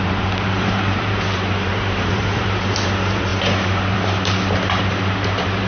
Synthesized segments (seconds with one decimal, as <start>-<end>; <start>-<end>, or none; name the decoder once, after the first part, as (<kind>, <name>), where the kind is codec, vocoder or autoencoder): 0.0-5.7 (vocoder, BigVGAN v2)